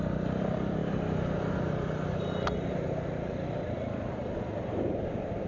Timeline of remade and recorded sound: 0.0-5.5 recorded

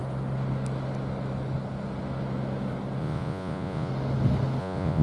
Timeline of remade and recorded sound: 0.0-3.0 recorded; 3.0-3.9 remade; 3.9-4.6 recorded; 4.6-5.0 remade

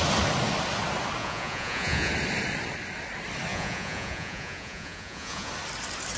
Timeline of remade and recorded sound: 0.0-1.2 recorded; 1.2-2.1 remade; 2.1-3.5 recorded; 3.5-5.5 remade; 5.5-6.2 recorded

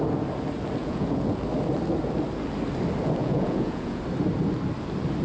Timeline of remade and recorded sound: 0.0-0.8 recorded; 0.8-1.4 remade; 1.4-3.2 recorded; 3.2-4.0 remade; 4.0-5.2 recorded

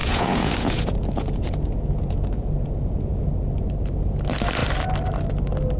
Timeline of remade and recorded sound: 0.0-3.5 remade; 3.5-5.8 recorded